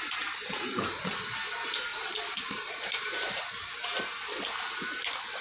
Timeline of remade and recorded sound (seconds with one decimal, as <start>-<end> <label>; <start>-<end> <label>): 0.0-1.9 recorded; 1.9-3.4 remade; 3.4-5.4 recorded

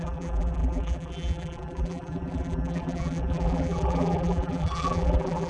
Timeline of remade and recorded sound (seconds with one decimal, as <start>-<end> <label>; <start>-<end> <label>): 0.0-5.5 remade

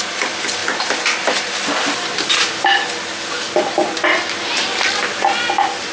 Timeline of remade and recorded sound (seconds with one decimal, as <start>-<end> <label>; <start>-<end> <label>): 0.0-5.9 recorded

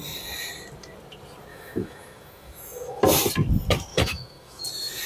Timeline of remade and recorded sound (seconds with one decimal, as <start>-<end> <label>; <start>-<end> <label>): 0.0-1.5 recorded; 1.5-3.0 remade; 3.0-3.9 recorded; 3.9-4.6 remade; 4.6-5.1 recorded

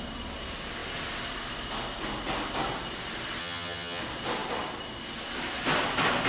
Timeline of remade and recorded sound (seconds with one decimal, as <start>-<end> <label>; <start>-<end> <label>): 0.0-3.4 recorded; 3.4-4.0 remade; 4.0-6.3 recorded

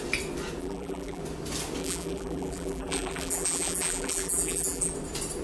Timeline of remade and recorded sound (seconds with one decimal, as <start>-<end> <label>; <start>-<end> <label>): 0.0-0.6 recorded; 0.6-1.2 remade; 1.2-1.8 recorded; 1.8-4.9 remade; 4.9-5.4 recorded

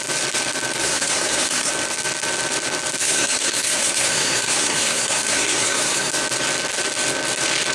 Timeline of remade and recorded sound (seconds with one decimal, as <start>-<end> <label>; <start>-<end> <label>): 0.0-0.8 recorded; 0.8-1.7 remade; 1.7-3.0 recorded; 3.0-6.1 remade; 6.1-7.7 recorded